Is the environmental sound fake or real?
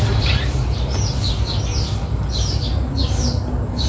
real